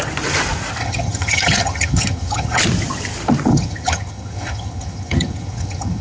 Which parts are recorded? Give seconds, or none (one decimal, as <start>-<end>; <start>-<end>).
0.0-0.8; 2.6-3.5

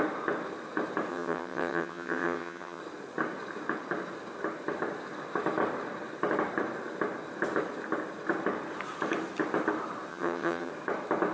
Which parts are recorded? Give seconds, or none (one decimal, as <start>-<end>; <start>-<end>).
0.0-1.1; 2.8-10.1; 10.7-11.3

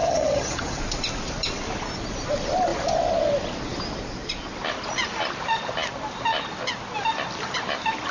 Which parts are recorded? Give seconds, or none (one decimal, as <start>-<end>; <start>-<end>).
0.8-8.1

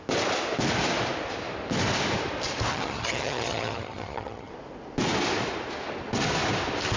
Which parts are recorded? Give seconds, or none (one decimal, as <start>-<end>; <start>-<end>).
0.0-2.7; 4.5-7.0